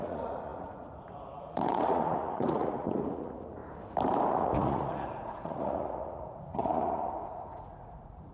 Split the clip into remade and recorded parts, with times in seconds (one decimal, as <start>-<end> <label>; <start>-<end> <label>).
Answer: 0.0-3.6 remade; 3.6-4.3 recorded; 4.3-8.3 remade